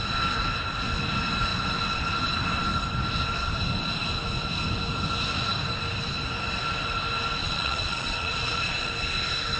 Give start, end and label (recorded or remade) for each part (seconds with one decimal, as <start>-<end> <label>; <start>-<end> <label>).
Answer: 0.0-7.4 recorded; 7.4-8.9 remade; 8.9-9.6 recorded